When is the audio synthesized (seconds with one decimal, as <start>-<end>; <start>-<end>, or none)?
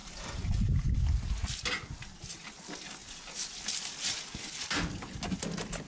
0.0-1.3